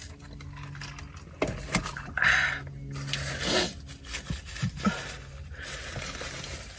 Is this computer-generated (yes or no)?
no